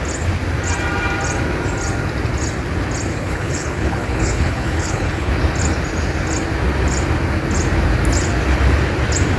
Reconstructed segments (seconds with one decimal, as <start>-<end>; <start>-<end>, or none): 3.1-5.3